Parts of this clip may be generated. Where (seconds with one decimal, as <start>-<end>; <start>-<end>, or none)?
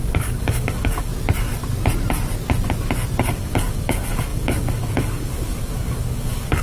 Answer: 0.0-1.1; 3.2-6.6